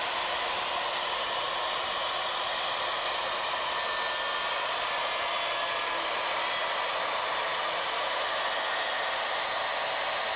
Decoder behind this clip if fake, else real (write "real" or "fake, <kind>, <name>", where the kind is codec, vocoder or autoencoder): real